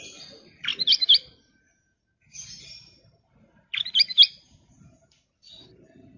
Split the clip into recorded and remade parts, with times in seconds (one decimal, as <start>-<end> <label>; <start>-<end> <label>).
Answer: 0.0-6.2 remade